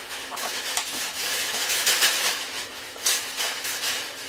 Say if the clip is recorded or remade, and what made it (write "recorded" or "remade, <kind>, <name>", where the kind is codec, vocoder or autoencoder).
remade, autoencoder, DAC-VAE